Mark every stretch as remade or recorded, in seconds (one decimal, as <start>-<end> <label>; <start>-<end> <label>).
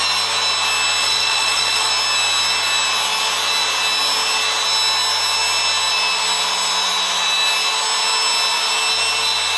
0.0-1.0 recorded; 1.0-1.9 remade; 1.9-9.6 recorded